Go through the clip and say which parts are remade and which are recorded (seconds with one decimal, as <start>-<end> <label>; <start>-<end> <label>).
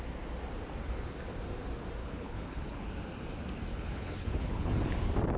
0.0-2.0 recorded; 2.0-2.9 remade; 2.9-3.7 recorded; 3.7-4.7 remade; 4.7-5.4 recorded